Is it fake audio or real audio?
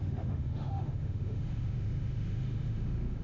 fake